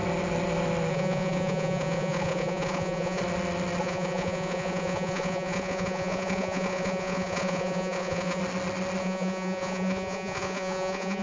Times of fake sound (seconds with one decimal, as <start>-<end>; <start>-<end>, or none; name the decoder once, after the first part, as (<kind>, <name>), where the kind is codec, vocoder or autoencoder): 0.9-3.2 (vocoder, Vocos); 3.8-8.4; 9.0-11.2